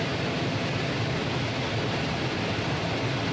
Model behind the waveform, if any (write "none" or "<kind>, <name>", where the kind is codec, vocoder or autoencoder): none